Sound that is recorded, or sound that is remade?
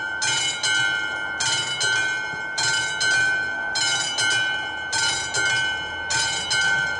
recorded